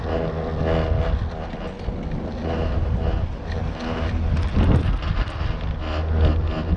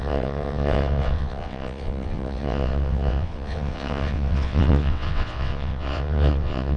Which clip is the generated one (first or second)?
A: second